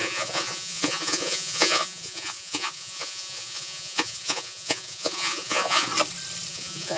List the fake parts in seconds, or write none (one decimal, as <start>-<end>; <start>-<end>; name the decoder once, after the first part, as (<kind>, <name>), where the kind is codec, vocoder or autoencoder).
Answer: 0.0-5.9 (vocoder, Vocos); 6.5-7.0